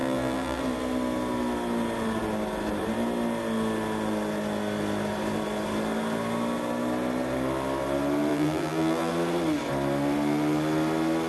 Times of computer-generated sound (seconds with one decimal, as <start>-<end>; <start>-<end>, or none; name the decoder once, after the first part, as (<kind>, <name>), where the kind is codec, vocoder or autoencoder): 0.0-0.6 (vocoder, BigVGAN v2); 8.3-9.1